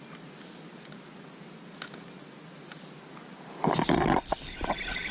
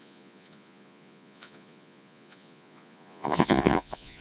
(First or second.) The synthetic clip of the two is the second